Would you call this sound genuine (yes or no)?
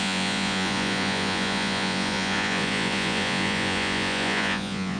no